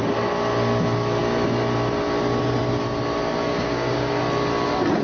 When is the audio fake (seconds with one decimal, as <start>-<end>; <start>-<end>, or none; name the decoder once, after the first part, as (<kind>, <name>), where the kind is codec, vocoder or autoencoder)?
3.5-4.2 (codec, DAC)